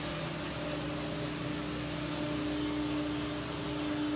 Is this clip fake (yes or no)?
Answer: no